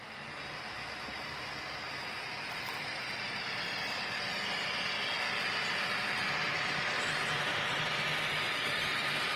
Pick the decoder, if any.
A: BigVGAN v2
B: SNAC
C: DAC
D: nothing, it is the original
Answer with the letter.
D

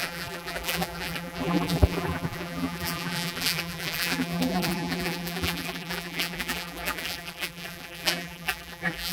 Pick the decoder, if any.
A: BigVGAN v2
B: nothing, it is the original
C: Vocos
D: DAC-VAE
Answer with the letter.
A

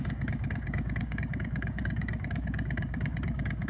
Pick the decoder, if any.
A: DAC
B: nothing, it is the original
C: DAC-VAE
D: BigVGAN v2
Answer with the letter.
A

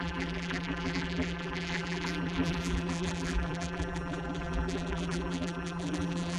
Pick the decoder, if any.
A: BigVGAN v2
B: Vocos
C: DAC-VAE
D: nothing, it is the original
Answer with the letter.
A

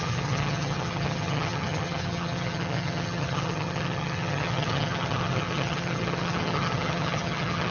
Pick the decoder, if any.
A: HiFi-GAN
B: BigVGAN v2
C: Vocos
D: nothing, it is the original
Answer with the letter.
A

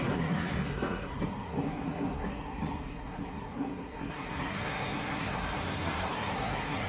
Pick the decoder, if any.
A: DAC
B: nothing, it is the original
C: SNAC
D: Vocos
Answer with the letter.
C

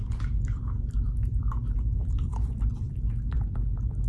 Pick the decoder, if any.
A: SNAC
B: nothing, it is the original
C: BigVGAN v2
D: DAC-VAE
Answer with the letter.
C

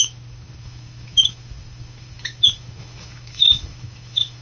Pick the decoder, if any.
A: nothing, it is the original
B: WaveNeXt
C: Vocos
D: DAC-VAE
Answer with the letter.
D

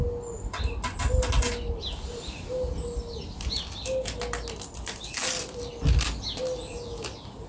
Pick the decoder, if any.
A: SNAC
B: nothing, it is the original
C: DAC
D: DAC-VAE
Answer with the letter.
B